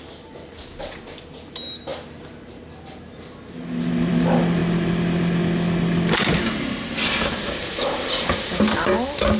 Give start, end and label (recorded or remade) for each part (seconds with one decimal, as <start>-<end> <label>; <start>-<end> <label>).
0.0-9.4 recorded